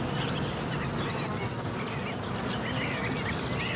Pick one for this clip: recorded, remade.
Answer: recorded